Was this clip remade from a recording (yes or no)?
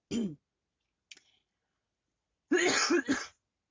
no